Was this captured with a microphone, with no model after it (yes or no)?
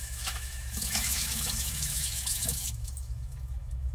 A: no